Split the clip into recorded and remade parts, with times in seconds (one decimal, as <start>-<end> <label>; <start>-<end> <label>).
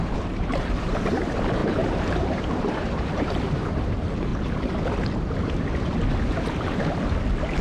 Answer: 0.0-4.3 remade; 4.3-7.6 recorded